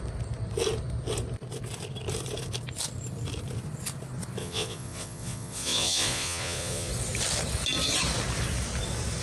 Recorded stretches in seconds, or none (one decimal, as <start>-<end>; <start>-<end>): 0.0-4.4; 6.9-9.2